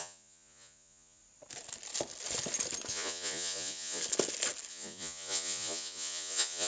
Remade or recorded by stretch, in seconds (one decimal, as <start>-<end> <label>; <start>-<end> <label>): 0.0-1.2 remade; 1.2-2.9 recorded; 2.9-4.0 remade; 4.0-4.7 recorded; 4.7-6.7 remade